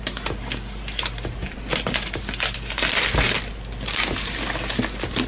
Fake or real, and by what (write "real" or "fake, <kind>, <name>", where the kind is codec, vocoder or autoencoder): real